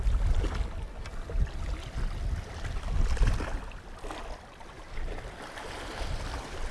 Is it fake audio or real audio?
real